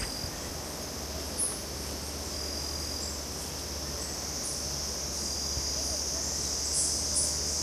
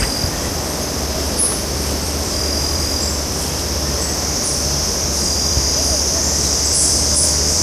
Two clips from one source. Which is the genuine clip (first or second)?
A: first